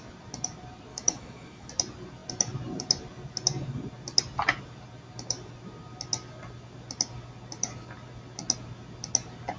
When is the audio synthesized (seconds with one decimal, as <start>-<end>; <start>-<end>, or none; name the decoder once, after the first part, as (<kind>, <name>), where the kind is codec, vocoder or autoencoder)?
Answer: 0.9-1.7 (autoencoder, DAC-VAE)